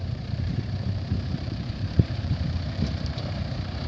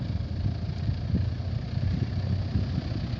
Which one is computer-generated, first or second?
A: first